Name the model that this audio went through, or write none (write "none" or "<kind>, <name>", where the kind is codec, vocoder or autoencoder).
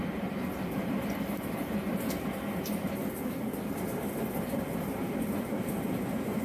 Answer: vocoder, BigVGAN v2